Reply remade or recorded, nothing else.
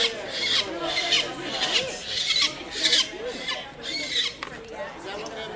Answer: recorded